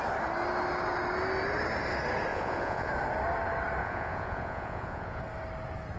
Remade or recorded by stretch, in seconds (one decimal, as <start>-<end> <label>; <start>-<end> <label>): 0.0-2.3 recorded; 2.3-2.9 remade; 2.9-3.8 recorded; 3.8-5.2 remade; 5.2-6.0 recorded